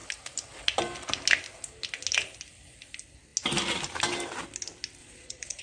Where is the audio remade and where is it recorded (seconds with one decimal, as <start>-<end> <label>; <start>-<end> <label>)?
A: 0.0-5.0 recorded; 5.0-5.6 remade